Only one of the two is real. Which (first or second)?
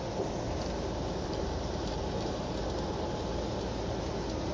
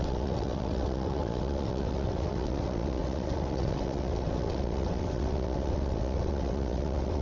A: first